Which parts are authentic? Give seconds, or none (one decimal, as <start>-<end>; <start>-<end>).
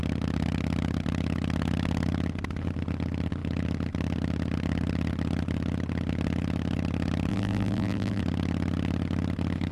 0.0-7.3; 8.2-9.7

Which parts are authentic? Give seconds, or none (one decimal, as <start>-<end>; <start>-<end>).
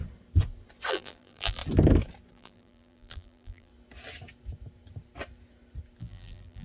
0.0-0.9; 1.6-2.3; 3.7-6.0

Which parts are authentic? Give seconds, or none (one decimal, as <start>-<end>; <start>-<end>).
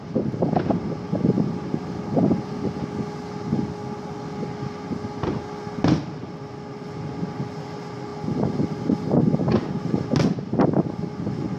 0.0-11.6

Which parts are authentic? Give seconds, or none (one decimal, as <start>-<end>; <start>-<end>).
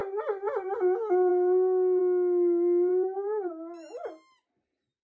0.8-1.3; 2.0-2.9; 3.5-5.0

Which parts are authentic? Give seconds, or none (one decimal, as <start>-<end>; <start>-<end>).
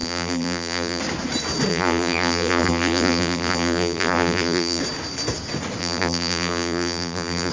1.0-1.7; 4.8-5.8